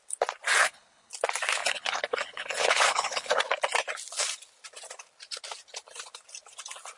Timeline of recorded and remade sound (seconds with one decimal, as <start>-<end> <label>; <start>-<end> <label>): 0.0-0.6 recorded; 0.6-1.1 remade; 1.1-1.6 recorded; 1.6-3.4 remade; 3.4-7.0 recorded